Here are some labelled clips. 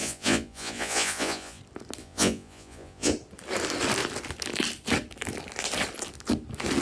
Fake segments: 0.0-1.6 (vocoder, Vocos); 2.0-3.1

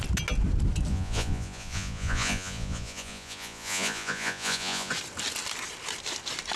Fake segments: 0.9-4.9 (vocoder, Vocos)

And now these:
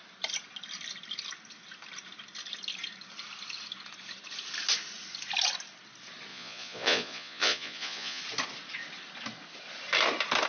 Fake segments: 6.3-8.2 (vocoder, Vocos)